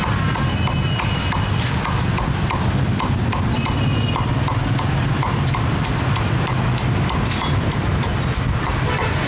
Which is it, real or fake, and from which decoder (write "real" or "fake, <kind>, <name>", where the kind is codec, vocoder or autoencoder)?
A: real